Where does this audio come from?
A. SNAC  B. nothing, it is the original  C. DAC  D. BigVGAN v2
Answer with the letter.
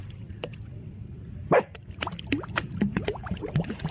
D